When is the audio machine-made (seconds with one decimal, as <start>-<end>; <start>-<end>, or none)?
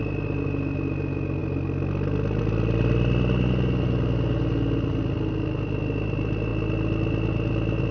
6.5-7.9